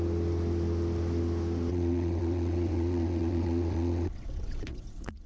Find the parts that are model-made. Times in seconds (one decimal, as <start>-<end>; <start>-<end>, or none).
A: 1.7-5.3

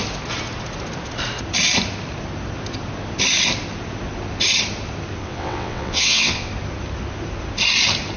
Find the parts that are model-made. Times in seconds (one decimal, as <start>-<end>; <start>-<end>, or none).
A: 5.2-6.5

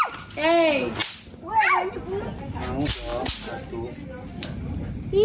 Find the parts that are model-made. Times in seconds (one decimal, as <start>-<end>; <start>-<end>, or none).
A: none

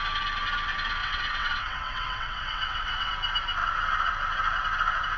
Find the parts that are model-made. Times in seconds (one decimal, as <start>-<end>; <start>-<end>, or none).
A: 1.0-3.1